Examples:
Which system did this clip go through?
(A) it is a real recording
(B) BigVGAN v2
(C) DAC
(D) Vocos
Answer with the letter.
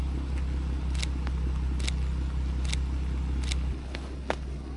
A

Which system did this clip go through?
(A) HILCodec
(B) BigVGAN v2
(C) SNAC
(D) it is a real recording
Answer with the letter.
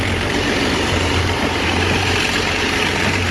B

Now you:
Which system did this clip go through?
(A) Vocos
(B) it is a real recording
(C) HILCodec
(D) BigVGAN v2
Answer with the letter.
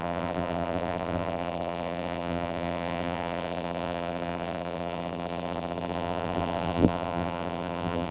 D